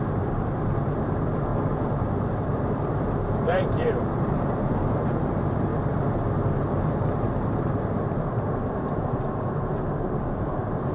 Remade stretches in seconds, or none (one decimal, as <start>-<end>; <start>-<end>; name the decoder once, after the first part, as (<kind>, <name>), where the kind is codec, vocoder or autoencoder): 0.0-1.5 (vocoder, BigVGAN v2); 2.3-5.7; 6.6-10.9